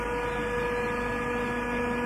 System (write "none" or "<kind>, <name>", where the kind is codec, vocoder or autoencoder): none